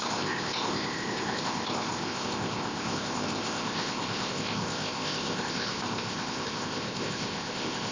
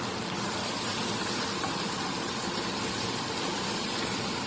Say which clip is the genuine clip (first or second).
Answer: second